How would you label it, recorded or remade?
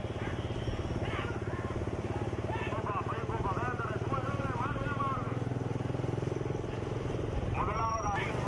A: recorded